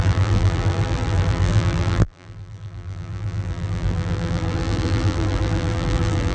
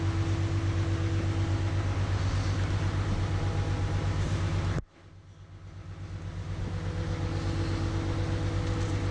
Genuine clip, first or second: second